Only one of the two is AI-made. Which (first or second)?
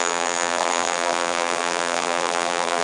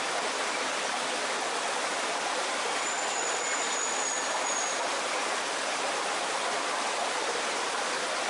first